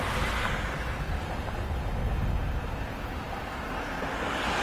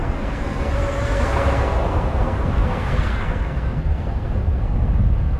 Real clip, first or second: first